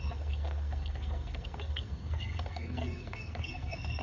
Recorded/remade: remade